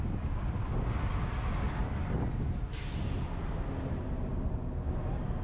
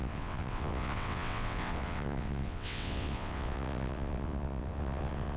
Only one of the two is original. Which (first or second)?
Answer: first